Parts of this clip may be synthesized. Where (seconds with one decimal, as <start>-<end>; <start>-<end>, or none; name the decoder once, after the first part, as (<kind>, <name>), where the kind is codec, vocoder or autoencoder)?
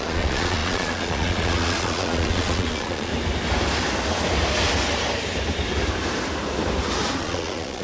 0.0-3.1 (vocoder, Vocos); 7.2-7.8